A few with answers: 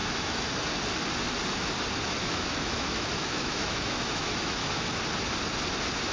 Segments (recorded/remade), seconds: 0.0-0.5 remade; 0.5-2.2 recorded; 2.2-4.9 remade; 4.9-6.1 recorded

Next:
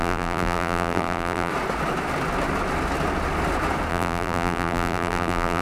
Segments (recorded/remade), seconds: 0.0-1.5 remade; 1.5-3.9 recorded; 3.9-5.6 remade

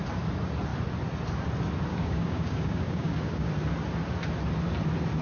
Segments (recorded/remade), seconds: 0.0-1.9 recorded; 1.9-3.5 remade; 3.5-5.2 recorded

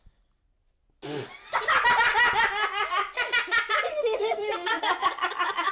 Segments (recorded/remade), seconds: 0.0-3.9 recorded; 3.9-4.8 remade; 4.8-5.7 recorded

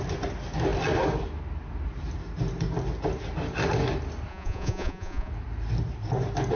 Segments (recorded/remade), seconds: 0.0-4.3 recorded; 4.3-5.3 remade; 5.3-6.5 recorded

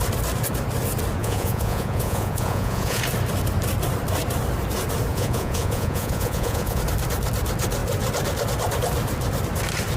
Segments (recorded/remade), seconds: 0.0-1.2 recorded; 1.2-3.0 remade; 3.0-5.1 recorded; 5.1-6.8 remade; 6.8-10.0 recorded

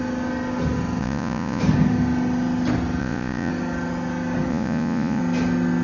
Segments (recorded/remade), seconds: 0.0-1.0 recorded; 1.0-1.6 remade; 1.6-3.0 recorded; 3.0-3.5 remade; 3.5-4.5 recorded; 4.5-5.2 remade; 5.2-5.8 recorded